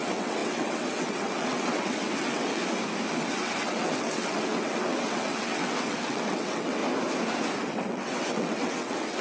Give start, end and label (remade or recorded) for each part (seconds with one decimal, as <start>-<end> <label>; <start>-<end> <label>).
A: 0.0-2.6 remade; 2.6-3.1 recorded; 3.1-6.8 remade; 6.8-7.7 recorded; 7.7-9.2 remade